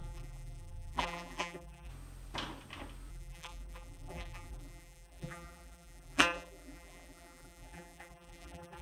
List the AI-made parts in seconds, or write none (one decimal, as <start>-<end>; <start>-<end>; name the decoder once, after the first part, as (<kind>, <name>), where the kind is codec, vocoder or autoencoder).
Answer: 0.0-1.9 (vocoder, BigVGAN v2); 3.1-8.8